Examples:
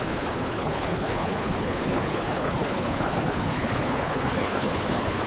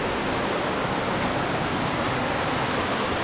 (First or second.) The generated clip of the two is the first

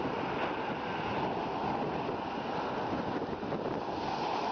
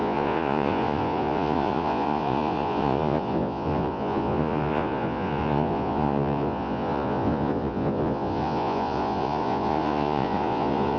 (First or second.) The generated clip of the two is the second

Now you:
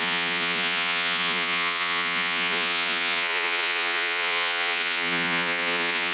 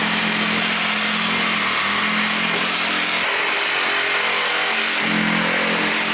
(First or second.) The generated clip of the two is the first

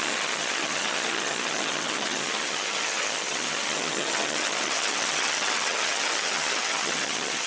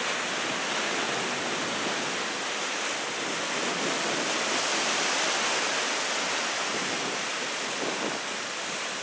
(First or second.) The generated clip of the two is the first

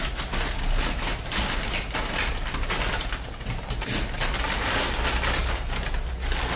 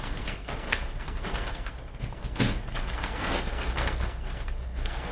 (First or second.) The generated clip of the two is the second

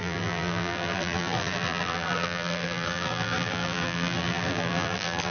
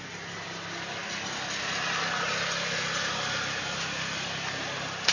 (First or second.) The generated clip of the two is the first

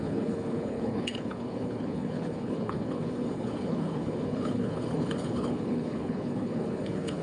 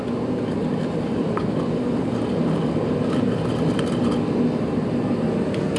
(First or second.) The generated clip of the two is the first